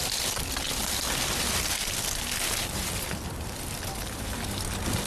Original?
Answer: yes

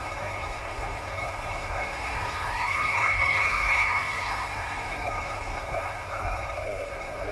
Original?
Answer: no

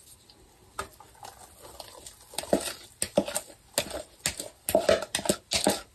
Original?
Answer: yes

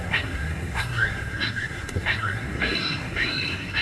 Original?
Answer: no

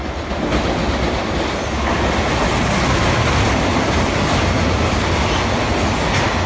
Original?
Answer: yes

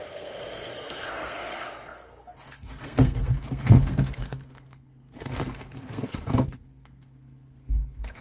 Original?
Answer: no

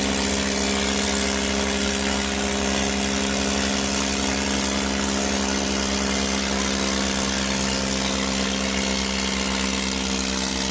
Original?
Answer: yes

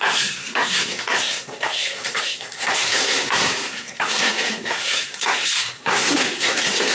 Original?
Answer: no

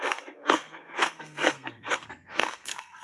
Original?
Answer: no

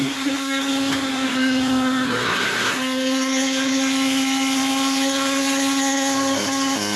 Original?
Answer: no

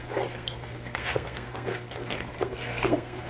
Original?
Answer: no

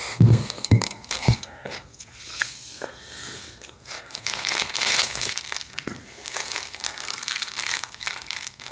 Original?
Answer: no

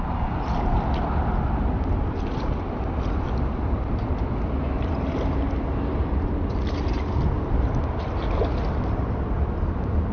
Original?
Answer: yes